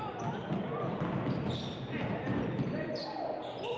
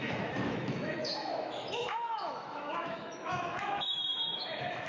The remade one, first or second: second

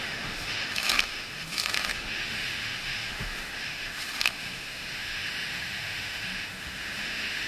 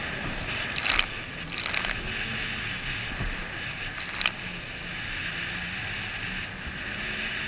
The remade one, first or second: first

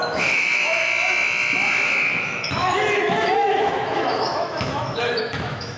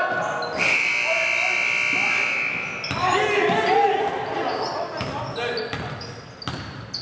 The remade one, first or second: first